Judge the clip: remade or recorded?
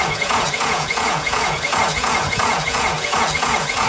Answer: remade